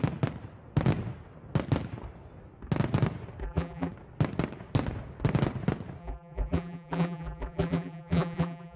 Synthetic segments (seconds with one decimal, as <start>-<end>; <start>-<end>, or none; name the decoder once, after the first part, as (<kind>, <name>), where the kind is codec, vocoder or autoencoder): 3.4-3.9 (vocoder, BigVGAN v2); 6.0-8.8